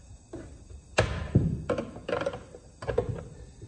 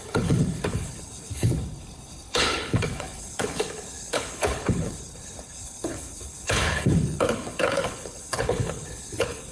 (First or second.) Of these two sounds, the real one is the first